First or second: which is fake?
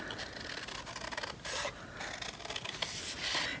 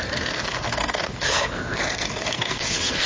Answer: second